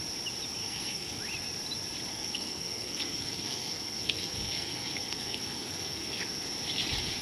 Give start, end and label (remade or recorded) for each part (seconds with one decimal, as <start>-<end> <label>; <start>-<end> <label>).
0.0-0.6 recorded; 0.6-1.2 remade; 1.2-2.1 recorded; 2.1-6.4 remade; 6.4-7.2 recorded

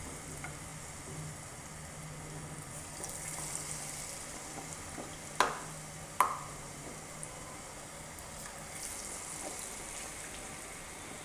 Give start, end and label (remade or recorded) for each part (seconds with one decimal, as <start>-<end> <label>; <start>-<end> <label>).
0.0-11.2 recorded

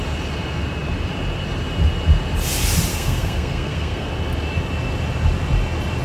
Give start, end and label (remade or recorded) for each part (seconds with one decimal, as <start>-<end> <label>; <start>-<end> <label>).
0.0-2.9 recorded; 2.9-4.1 remade; 4.1-6.0 recorded

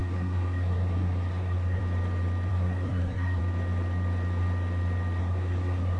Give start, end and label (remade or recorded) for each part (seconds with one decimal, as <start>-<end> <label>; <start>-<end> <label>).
0.0-1.8 remade; 1.8-2.5 recorded; 2.5-3.4 remade; 3.4-5.2 recorded; 5.2-6.0 remade